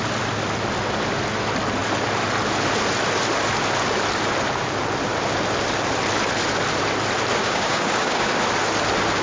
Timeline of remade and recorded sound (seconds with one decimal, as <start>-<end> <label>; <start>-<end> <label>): 0.0-7.4 recorded; 7.4-8.3 remade; 8.3-9.2 recorded